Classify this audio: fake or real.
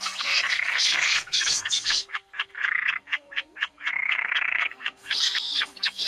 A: fake